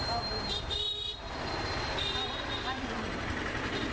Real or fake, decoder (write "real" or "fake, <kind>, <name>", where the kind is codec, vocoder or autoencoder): fake, vocoder, BigVGAN v2